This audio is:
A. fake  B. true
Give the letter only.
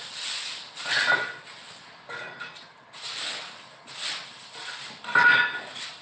B